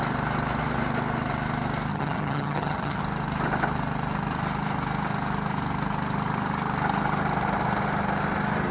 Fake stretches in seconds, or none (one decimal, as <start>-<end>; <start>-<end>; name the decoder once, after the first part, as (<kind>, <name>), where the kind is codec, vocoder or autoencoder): 1.9-3.0 (vocoder, HiFi-GAN)